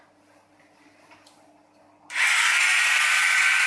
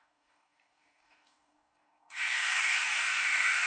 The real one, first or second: first